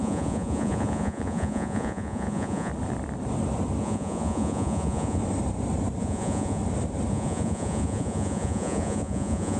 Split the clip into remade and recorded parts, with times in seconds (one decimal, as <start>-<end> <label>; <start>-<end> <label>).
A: 0.0-2.7 remade; 2.7-3.8 recorded; 3.8-5.2 remade; 5.2-6.0 recorded; 6.0-6.6 remade; 6.6-7.1 recorded; 7.1-9.6 remade